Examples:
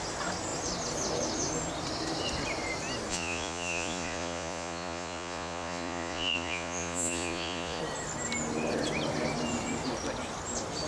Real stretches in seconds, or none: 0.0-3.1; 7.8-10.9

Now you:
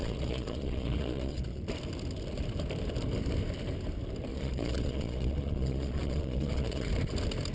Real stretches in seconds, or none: 1.6-4.3; 6.9-7.5

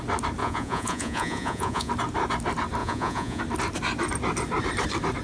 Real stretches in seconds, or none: 0.0-0.4; 1.9-2.8; 3.4-5.2

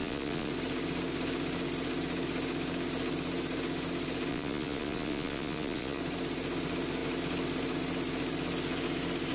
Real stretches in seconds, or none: 0.5-4.3; 6.0-9.3

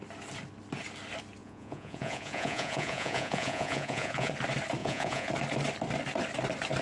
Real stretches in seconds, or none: 0.0-1.4; 4.3-4.8; 5.3-6.8

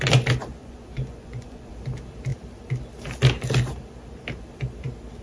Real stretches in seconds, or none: 0.0-0.6; 1.7-5.2

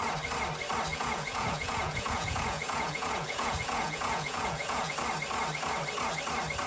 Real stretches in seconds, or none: 0.0-0.9; 4.9-6.7

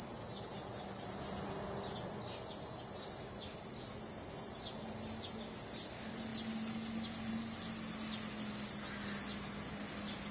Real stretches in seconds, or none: 0.0-10.3